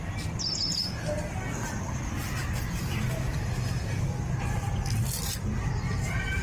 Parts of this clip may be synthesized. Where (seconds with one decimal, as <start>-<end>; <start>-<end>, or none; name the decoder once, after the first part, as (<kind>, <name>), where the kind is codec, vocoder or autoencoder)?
none